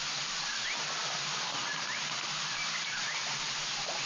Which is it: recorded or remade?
recorded